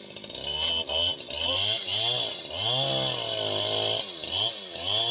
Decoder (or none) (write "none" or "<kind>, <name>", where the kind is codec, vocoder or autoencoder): none